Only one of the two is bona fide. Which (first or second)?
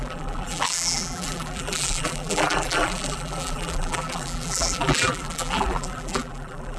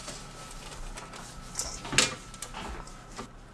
second